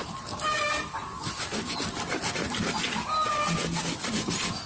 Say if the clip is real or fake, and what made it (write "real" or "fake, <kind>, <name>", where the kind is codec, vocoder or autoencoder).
real